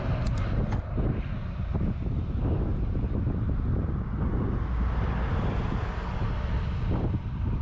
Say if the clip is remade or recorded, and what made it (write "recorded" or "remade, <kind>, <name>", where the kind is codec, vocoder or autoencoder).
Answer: recorded